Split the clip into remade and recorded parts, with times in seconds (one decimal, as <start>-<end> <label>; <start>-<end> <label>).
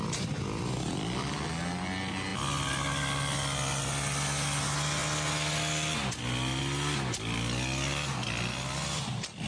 0.0-9.5 recorded